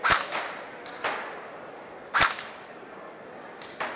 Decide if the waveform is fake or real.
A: real